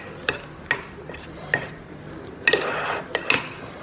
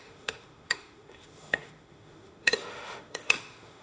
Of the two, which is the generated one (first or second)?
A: second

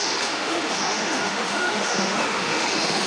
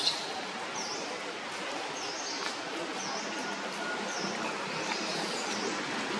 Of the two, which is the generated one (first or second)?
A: first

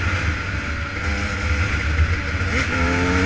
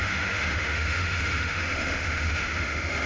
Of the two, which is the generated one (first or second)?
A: second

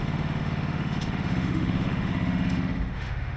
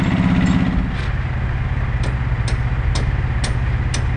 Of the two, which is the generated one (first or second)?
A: first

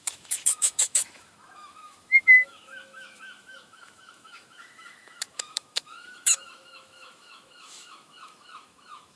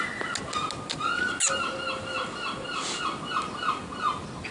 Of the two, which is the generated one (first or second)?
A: first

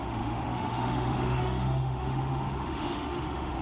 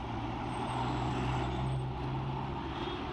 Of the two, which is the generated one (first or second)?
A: first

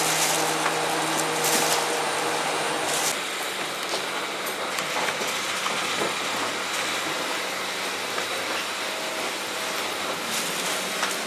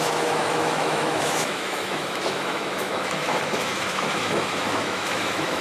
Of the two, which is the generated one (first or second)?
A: second